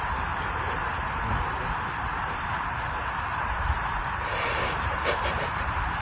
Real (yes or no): no